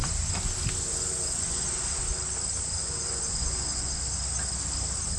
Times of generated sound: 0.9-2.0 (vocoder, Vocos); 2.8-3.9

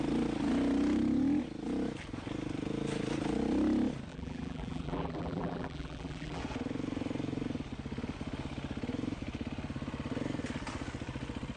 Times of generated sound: 4.1-6.4 (vocoder, BigVGAN v2)

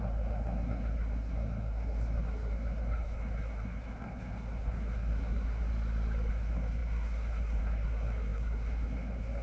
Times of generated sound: 0.0-5.7 (codec, SNAC); 6.3-9.4

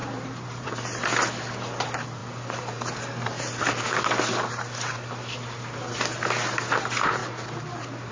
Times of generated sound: 0.0-0.7 (vocoder, BigVGAN v2)

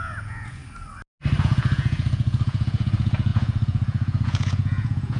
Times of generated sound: 0.0-0.6 (vocoder, Vocos); 1.4-5.2